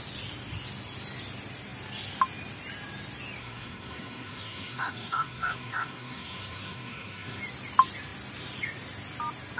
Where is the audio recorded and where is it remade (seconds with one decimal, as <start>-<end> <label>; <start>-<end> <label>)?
0.0-3.4 recorded; 3.4-7.4 remade; 7.4-9.6 recorded